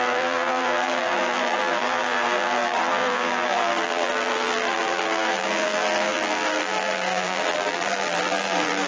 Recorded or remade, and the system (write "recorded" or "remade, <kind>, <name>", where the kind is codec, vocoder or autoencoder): remade, vocoder, BigVGAN v2